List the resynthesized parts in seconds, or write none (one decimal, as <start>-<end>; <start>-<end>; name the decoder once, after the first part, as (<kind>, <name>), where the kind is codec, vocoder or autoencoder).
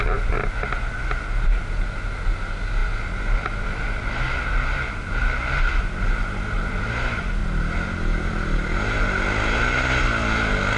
none